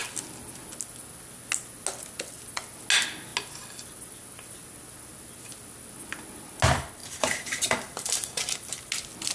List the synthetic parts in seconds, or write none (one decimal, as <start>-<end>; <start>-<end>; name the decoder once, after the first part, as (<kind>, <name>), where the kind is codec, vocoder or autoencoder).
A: 7.0-8.9 (vocoder, BigVGAN v2)